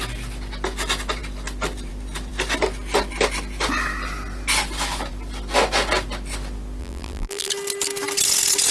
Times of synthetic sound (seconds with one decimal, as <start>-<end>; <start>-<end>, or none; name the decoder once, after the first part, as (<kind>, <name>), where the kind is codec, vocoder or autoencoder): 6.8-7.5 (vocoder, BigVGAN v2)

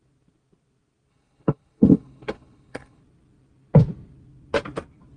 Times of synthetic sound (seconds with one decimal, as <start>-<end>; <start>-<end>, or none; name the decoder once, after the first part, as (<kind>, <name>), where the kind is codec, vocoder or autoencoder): 1.1-3.0 (codec, HILCodec)

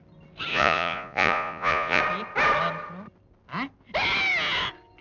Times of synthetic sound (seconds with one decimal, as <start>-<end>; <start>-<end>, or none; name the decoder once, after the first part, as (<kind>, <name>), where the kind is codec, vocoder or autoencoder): 0.5-2.0 (vocoder, Vocos)

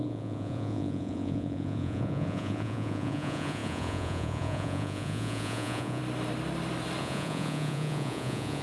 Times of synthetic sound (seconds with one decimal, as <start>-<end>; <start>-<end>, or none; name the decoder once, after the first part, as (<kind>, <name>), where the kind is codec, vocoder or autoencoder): 0.0-6.0 (vocoder, Vocos); 7.0-8.6

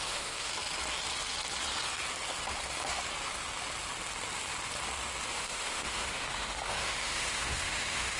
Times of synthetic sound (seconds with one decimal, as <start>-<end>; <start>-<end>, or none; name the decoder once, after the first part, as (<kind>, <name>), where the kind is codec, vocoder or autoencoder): 0.0-0.5 (autoencoder, DAC-VAE); 5.3-8.2